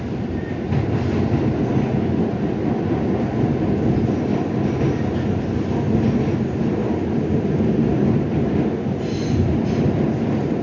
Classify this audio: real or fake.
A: real